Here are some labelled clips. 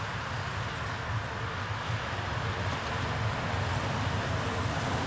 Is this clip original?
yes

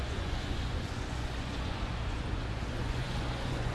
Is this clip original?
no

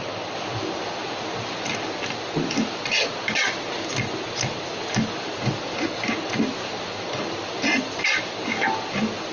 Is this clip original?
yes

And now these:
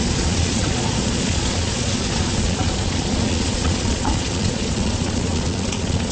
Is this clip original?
no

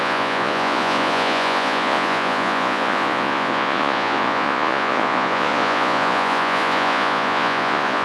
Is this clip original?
no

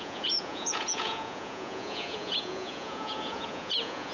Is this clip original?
no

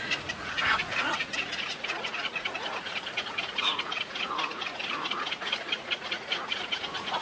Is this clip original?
no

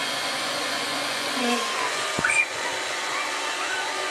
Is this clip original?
no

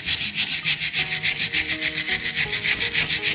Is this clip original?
yes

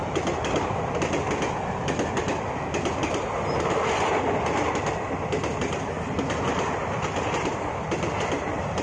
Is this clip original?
yes